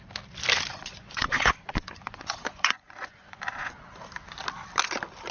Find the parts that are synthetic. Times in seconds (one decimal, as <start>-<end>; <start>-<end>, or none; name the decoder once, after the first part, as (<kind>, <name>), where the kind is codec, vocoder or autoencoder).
0.7-3.9 (vocoder, Vocos)